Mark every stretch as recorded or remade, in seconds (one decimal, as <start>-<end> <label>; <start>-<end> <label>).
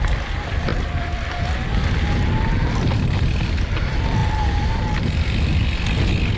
0.0-4.2 recorded; 4.2-6.0 remade; 6.0-6.4 recorded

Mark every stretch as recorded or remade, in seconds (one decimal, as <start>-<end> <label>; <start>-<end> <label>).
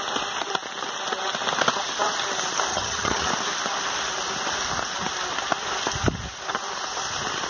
0.0-2.7 recorded; 2.7-3.3 remade; 3.3-7.5 recorded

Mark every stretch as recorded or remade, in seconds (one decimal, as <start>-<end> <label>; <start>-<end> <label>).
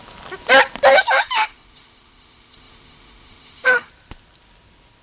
0.0-0.9 recorded; 0.9-3.9 remade; 3.9-5.0 recorded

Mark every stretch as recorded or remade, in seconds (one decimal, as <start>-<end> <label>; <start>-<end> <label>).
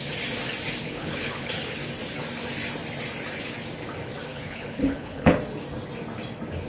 0.0-0.8 recorded; 0.8-1.5 remade; 1.5-4.3 recorded; 4.3-5.4 remade; 5.4-6.7 recorded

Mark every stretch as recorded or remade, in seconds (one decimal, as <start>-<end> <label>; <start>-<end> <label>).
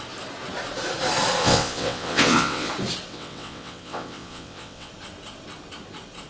0.0-1.4 recorded; 1.4-2.7 remade; 2.7-3.1 recorded; 3.1-4.9 remade; 4.9-6.3 recorded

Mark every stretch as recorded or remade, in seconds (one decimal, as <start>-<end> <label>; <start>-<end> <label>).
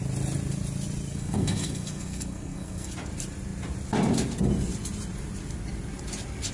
0.0-1.1 recorded; 1.1-2.9 remade; 2.9-6.5 recorded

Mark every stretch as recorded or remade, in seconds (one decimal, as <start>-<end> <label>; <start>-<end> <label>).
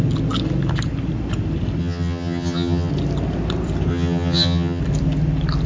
0.0-1.8 recorded; 1.8-2.9 remade; 2.9-3.9 recorded; 3.9-4.8 remade; 4.8-5.7 recorded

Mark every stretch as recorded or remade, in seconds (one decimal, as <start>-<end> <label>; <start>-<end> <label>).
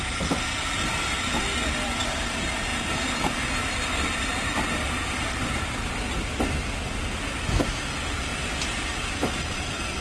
0.0-10.0 recorded